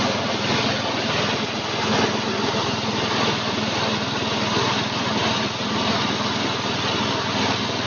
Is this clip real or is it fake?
real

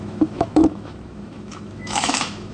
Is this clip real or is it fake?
fake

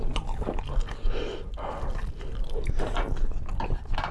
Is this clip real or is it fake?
real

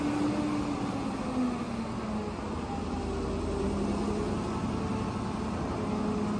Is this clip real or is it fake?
real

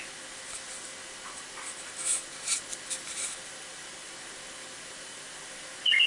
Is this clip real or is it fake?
real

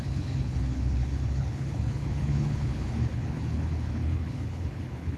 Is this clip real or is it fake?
fake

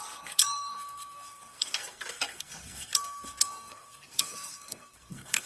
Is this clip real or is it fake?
fake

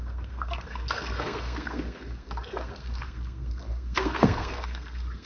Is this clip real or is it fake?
fake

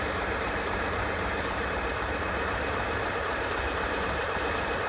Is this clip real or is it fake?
fake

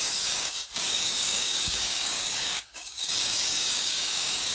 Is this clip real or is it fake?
fake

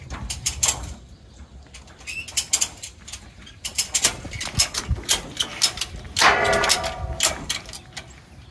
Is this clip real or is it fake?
real